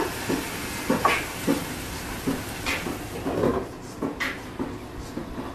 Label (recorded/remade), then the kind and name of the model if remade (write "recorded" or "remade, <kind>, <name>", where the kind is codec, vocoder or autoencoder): recorded